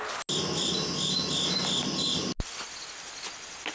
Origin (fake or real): real